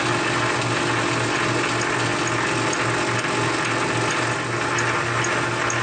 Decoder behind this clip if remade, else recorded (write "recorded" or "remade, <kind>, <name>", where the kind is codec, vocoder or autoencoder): recorded